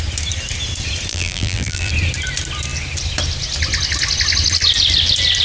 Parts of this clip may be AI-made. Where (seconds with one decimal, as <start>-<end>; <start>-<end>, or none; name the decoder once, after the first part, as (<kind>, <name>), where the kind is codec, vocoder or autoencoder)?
1.1-1.9 (vocoder, BigVGAN v2)